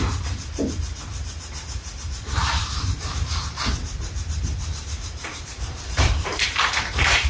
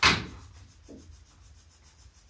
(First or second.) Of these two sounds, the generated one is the first